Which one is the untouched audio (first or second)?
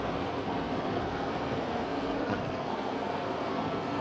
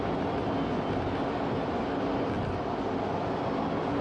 second